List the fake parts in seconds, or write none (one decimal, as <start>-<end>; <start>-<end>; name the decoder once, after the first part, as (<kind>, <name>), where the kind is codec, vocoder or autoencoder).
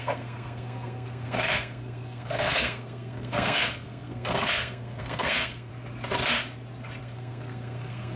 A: 0.0-5.7 (codec, SNAC); 7.0-8.2